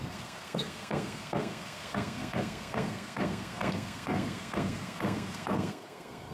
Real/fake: fake